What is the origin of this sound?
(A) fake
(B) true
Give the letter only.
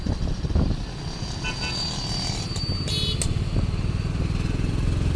B